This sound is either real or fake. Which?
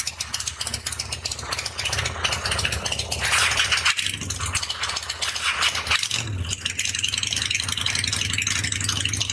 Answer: real